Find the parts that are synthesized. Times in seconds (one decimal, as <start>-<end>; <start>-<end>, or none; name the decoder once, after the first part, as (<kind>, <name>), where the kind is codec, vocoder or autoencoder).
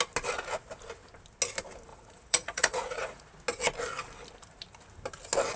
1.9-3.2 (vocoder, Vocos)